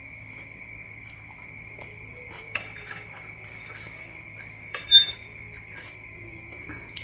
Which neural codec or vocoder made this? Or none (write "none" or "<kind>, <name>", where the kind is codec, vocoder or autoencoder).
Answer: codec, DAC